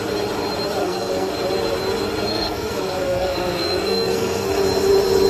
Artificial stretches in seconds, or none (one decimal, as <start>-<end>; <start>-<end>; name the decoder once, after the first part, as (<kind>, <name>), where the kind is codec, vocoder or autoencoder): 0.8-1.3 (codec, SNAC); 2.3-4.5